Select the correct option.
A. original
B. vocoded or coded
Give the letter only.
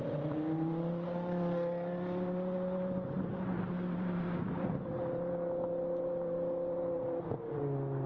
B